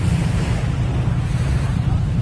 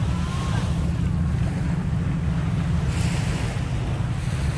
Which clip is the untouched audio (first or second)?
second